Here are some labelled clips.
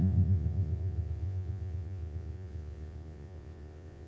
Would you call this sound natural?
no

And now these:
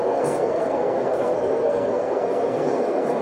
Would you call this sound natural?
no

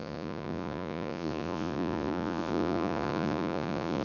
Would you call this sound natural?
no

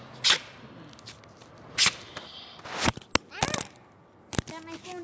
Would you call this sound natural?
yes